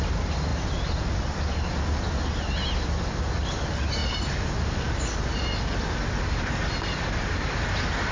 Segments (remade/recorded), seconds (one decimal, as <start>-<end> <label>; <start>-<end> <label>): 0.0-8.1 recorded